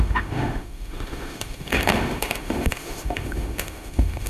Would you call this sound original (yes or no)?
no